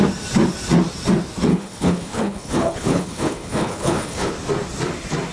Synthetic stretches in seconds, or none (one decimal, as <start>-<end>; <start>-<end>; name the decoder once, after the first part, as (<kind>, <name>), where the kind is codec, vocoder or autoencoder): 1.5-4.3 (codec, HILCodec)